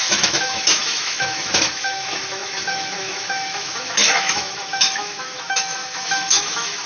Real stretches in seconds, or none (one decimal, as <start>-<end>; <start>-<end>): none

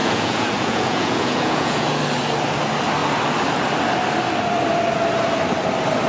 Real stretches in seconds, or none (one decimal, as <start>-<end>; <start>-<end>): 2.0-6.1

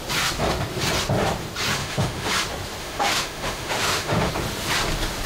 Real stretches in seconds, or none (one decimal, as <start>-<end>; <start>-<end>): 0.0-1.8; 2.3-2.8; 4.3-5.3

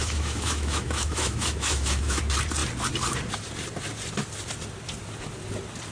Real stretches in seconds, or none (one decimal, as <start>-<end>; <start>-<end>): 2.2-5.9

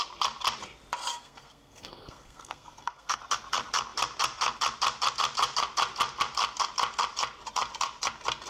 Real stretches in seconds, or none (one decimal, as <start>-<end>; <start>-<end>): 0.0-1.1; 3.2-8.5

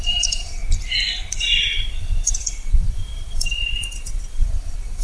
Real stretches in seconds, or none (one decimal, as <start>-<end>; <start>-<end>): 0.6-1.4

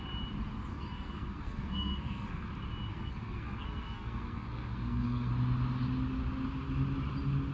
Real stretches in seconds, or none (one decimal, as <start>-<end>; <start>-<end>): 0.0-0.7; 2.5-2.9; 5.3-7.5

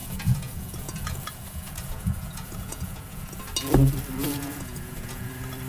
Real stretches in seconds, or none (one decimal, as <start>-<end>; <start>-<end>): 3.4-4.2; 5.3-5.7